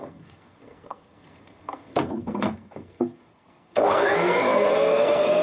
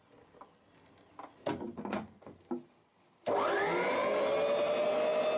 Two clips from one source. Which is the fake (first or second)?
first